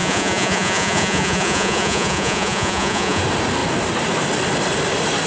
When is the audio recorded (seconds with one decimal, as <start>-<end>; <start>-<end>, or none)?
3.2-5.3